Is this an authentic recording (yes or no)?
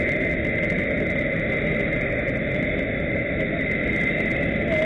yes